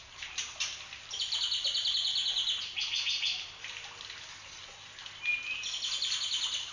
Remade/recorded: recorded